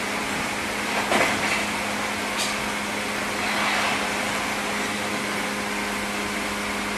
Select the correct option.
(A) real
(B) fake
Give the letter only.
A